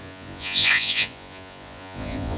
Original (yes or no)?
no